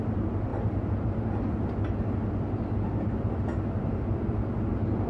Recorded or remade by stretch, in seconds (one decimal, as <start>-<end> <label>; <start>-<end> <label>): 0.0-5.1 recorded